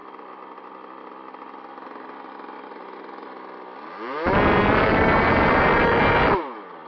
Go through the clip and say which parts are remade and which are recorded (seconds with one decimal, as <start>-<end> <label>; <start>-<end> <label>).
0.0-6.9 recorded